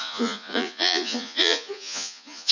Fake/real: fake